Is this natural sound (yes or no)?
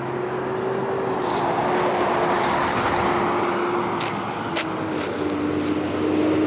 yes